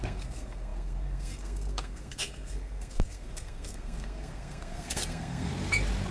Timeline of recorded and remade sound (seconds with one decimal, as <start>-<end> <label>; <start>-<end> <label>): 0.0-5.5 remade; 5.5-6.1 recorded